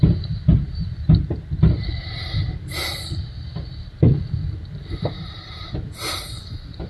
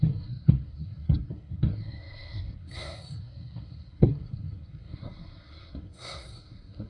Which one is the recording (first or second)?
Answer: first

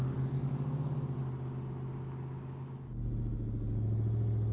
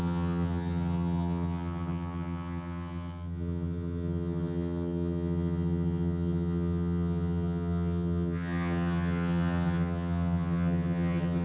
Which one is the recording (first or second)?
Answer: first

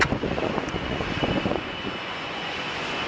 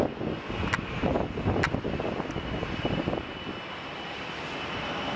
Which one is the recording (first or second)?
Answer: second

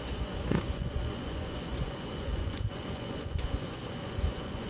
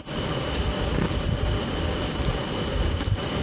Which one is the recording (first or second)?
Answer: second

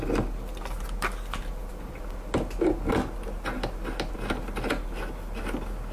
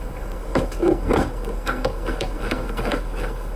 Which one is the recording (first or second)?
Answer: first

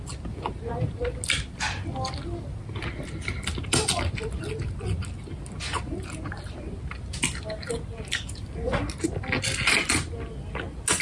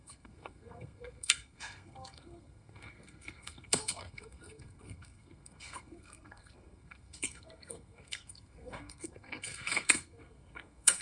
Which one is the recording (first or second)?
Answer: first